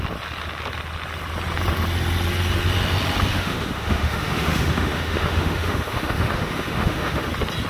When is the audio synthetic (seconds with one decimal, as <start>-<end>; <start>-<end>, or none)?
3.3-7.3